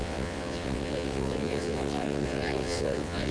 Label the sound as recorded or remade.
remade